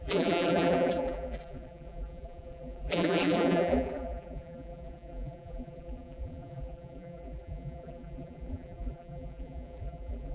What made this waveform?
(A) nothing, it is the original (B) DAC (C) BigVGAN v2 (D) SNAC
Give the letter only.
C